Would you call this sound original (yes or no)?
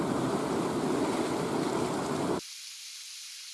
yes